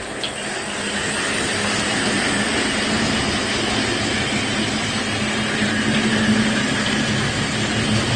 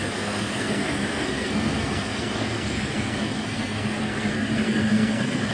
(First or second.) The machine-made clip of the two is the second